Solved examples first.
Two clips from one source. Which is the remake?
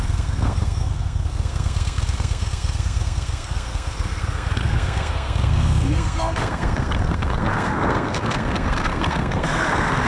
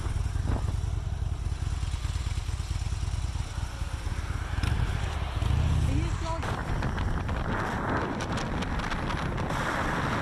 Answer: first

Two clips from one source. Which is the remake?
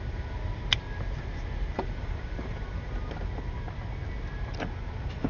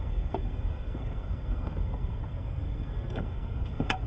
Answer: second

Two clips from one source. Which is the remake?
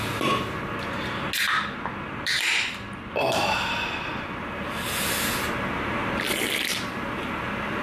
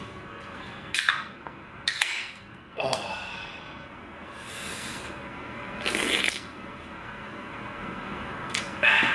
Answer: second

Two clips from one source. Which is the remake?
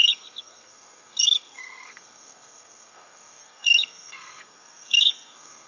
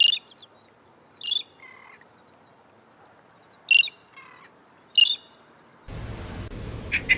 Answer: first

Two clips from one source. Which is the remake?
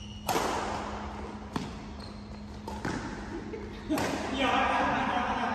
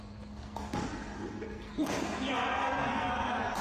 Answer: second